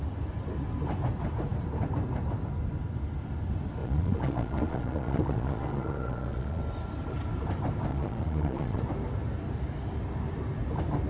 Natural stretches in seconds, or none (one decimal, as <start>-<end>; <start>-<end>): 0.0-3.8; 6.6-7.9; 8.8-11.1